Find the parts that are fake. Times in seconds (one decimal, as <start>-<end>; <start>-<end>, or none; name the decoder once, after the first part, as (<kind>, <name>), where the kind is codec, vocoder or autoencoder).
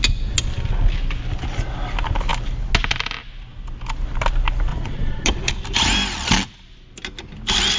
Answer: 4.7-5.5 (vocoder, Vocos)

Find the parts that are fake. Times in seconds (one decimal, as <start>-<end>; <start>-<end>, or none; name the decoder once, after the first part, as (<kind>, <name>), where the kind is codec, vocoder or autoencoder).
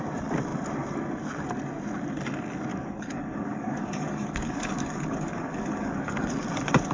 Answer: 2.7-6.4 (codec, DAC)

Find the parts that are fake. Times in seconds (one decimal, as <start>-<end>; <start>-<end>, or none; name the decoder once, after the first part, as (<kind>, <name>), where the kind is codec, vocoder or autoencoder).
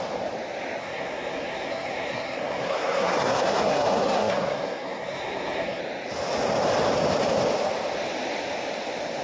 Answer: 0.8-5.8 (codec, SNAC)